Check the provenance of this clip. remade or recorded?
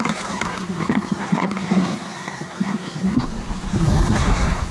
remade